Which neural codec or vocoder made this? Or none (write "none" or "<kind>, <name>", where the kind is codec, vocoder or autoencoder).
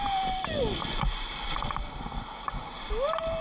none